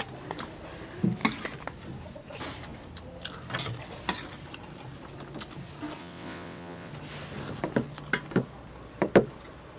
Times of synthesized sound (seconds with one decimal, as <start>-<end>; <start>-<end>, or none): 6.0-6.9